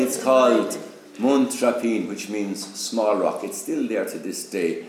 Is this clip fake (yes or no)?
no